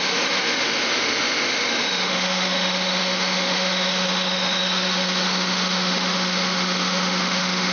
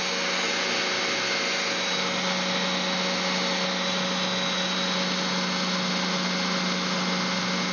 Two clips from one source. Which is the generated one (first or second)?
first